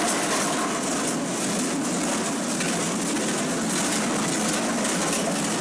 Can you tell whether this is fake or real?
real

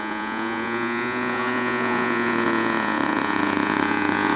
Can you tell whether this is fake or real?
fake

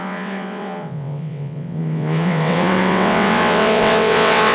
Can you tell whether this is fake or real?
fake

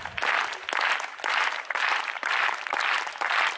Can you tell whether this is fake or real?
real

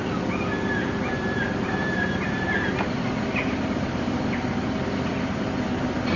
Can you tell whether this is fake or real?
real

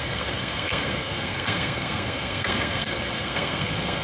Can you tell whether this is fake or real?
fake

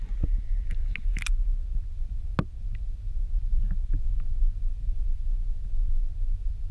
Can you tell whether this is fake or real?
real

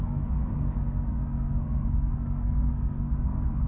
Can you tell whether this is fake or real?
fake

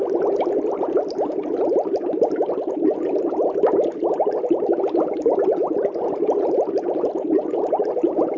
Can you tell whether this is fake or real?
real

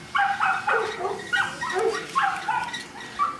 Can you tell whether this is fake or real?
real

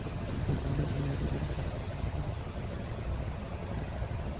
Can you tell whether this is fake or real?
fake